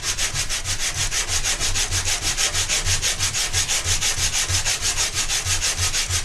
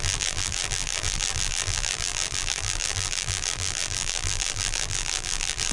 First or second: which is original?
first